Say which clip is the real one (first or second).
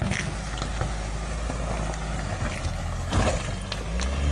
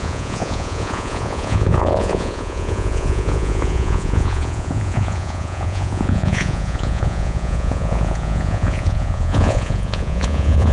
first